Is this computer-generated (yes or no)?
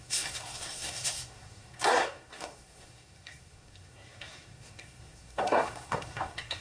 yes